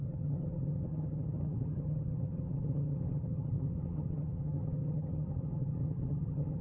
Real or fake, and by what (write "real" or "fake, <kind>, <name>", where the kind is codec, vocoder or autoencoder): fake, vocoder, HiFi-GAN